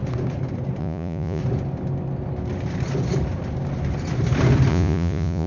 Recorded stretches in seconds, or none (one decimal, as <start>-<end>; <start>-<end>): 0.0-0.8; 1.4-4.7